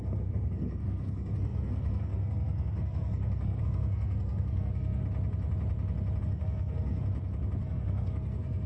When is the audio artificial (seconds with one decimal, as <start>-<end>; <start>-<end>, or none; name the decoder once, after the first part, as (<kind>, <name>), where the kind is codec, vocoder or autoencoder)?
0.0-5.0 (codec, SNAC); 6.2-7.0; 7.6-8.7